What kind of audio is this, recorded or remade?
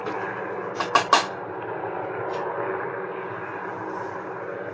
recorded